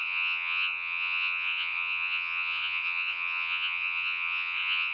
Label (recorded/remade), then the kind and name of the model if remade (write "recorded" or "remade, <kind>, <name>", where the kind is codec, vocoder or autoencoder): remade, vocoder, Vocos